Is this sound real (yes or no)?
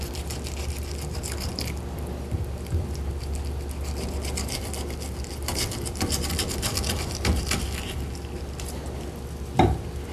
no